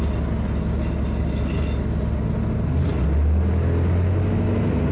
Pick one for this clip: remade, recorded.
recorded